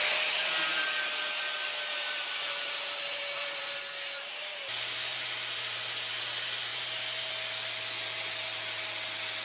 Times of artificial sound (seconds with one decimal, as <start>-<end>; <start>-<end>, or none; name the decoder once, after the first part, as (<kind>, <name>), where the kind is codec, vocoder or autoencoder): 1.9-3.8 (vocoder, BigVGAN v2); 5.1-6.2; 6.7-7.3